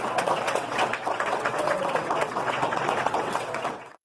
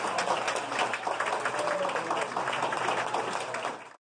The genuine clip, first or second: second